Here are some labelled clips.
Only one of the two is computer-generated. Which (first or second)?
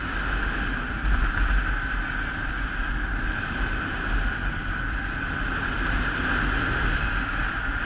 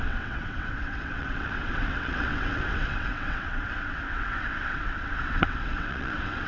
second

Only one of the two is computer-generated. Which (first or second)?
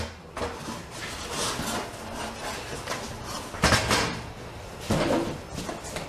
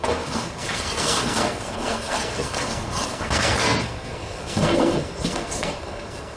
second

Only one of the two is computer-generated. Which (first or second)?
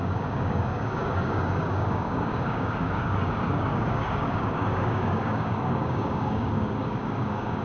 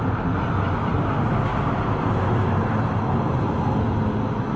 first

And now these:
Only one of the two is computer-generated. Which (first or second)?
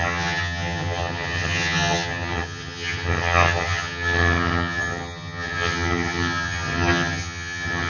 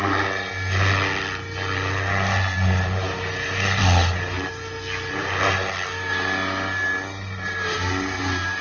first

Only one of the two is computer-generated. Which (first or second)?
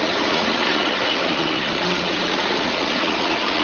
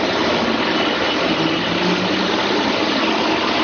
first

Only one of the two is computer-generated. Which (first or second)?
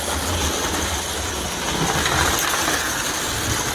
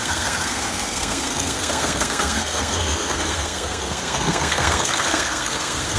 second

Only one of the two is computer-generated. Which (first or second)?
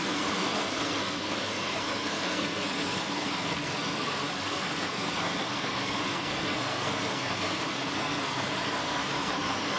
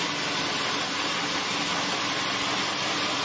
first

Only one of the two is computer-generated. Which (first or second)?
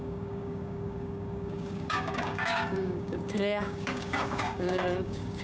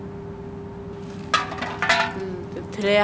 first